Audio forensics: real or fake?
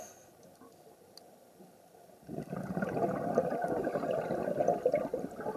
real